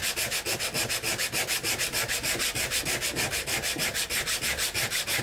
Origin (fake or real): real